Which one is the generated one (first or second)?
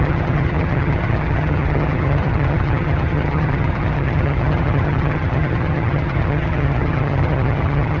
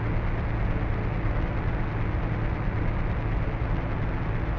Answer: first